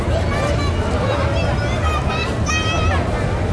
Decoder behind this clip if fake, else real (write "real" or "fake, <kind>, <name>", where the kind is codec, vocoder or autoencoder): real